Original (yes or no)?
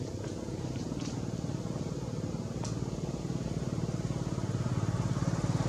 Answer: yes